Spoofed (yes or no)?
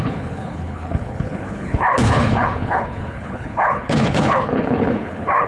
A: yes